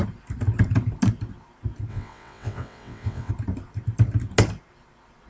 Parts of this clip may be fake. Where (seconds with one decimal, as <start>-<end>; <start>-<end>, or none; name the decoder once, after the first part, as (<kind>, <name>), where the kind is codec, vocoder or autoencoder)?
1.9-3.3 (vocoder, WaveNeXt)